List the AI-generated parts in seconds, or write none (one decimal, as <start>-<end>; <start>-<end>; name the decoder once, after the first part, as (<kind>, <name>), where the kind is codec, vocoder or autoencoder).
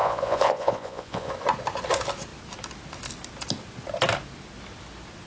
0.0-1.3 (vocoder, Vocos)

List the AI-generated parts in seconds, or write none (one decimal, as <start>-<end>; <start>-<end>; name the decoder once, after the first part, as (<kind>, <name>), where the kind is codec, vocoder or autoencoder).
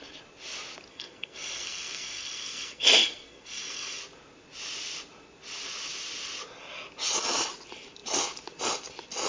0.9-4.0 (codec, SNAC)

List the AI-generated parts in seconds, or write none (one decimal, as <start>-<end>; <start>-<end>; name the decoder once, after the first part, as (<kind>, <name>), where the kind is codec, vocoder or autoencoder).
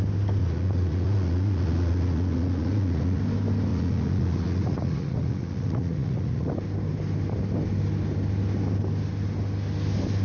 0.4-3.2 (vocoder, Vocos); 3.7-6.5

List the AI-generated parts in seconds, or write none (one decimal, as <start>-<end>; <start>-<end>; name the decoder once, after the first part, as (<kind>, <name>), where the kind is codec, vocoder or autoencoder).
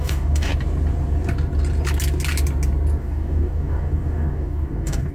0.0-0.5 (codec, DAC); 3.0-5.1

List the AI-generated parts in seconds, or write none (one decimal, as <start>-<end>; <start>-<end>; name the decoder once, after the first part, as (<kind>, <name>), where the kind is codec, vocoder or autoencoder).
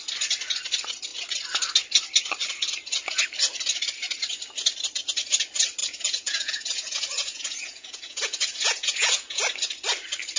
5.8-9.4 (vocoder, Vocos)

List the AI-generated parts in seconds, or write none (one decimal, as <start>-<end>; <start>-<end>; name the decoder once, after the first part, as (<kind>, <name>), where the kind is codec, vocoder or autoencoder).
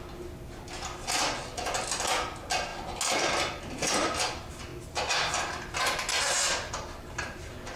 none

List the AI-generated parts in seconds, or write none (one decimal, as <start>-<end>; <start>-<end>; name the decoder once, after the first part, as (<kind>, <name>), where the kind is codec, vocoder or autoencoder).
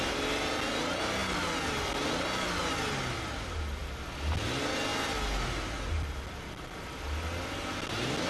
none